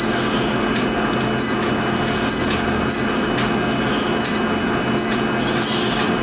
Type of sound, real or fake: real